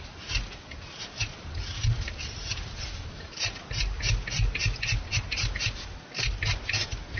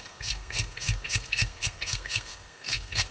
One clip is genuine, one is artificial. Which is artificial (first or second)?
second